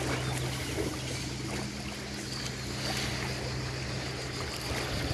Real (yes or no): yes